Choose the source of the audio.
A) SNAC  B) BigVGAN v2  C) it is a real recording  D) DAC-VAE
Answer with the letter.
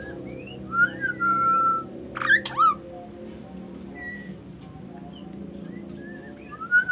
C